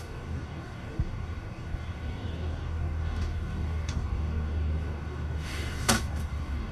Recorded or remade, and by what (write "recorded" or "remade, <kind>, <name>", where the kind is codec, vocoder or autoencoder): remade, codec, DAC